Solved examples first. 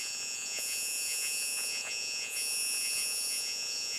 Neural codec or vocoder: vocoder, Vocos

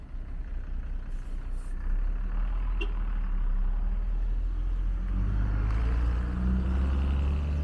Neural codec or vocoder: none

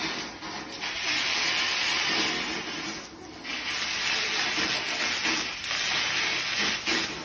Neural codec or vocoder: none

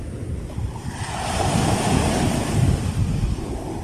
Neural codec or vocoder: none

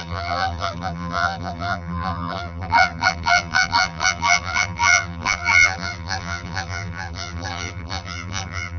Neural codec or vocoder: vocoder, BigVGAN v2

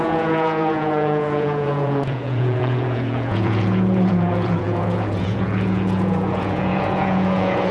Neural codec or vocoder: vocoder, Vocos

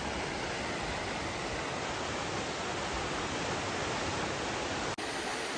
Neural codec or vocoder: none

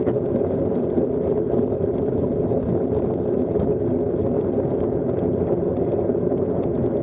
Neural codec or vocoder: none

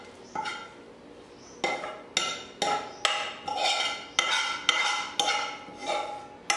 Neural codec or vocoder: none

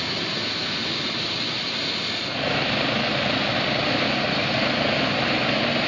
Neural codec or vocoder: none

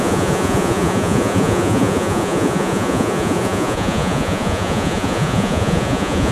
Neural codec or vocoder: vocoder, Vocos